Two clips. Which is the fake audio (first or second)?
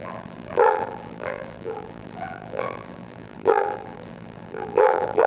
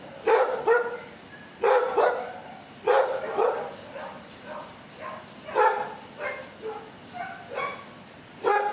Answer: first